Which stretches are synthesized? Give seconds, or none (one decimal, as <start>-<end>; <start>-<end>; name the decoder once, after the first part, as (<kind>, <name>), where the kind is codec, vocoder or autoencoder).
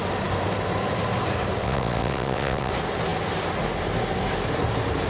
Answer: 1.6-2.7 (vocoder, WaveNeXt)